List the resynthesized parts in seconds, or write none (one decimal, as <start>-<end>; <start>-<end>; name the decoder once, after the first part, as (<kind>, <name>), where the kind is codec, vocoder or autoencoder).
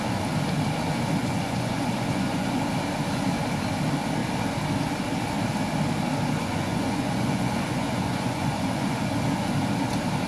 1.2-2.6 (vocoder, Vocos); 6.4-9.1